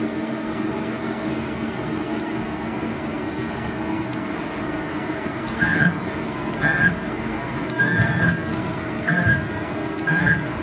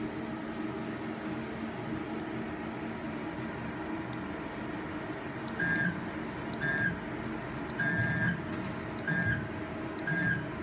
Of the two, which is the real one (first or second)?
second